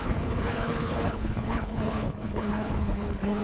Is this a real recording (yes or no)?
no